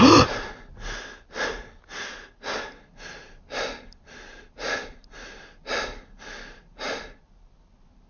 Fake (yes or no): no